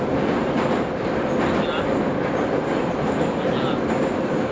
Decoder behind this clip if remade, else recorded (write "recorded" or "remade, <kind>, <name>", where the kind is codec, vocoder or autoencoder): recorded